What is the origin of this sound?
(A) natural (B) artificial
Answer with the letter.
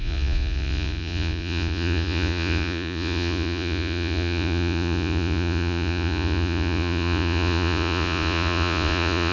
B